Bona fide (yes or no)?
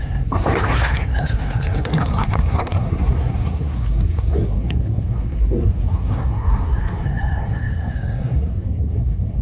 no